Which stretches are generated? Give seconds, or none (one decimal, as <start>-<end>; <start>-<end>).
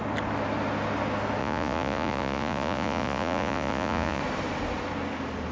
1.4-4.2